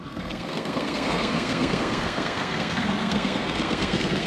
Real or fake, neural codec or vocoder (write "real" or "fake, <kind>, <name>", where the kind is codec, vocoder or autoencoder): fake, codec, SNAC